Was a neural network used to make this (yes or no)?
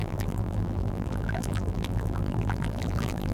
yes